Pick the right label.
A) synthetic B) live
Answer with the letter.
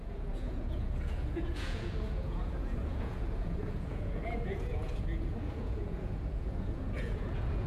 A